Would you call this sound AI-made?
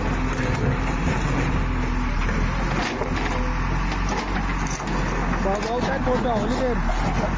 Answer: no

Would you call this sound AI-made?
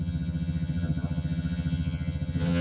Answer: yes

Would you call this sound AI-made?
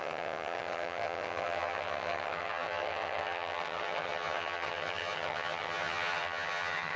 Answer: yes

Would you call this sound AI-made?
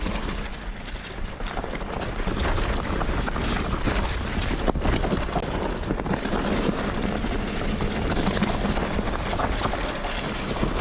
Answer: no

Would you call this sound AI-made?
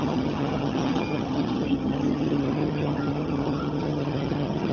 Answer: yes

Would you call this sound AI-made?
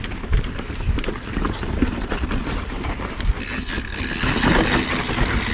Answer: no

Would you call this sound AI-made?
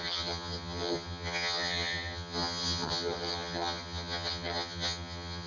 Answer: yes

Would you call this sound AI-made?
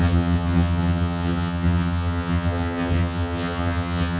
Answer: yes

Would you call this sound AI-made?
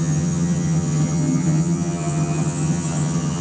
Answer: yes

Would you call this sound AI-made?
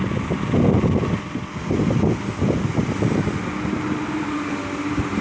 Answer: no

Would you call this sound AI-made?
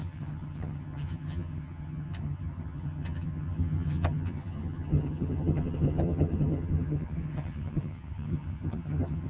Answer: yes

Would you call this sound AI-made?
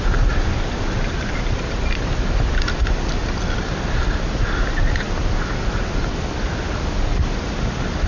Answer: no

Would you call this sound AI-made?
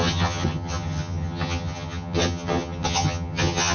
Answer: yes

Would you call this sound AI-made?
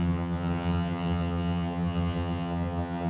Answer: yes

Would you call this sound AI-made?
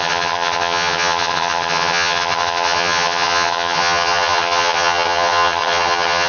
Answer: yes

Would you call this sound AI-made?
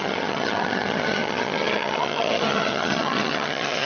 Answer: yes